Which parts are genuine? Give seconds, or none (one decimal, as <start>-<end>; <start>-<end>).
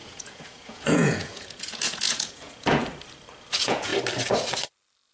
2.8-3.5; 3.9-5.1